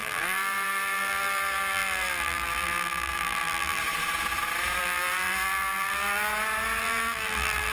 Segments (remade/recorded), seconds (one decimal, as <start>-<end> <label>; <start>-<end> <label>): 0.0-3.8 remade; 3.8-4.8 recorded; 4.8-6.3 remade; 6.3-6.8 recorded; 6.8-7.7 remade